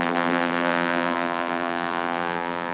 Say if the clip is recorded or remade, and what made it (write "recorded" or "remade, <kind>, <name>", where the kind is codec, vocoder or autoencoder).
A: remade, vocoder, BigVGAN v2